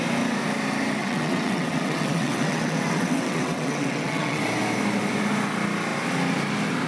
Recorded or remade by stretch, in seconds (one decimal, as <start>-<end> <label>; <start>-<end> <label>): 0.0-1.0 recorded; 1.0-4.4 remade; 4.4-6.9 recorded